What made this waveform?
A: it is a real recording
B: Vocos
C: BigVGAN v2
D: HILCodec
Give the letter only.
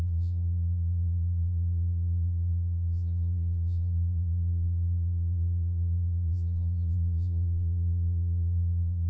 B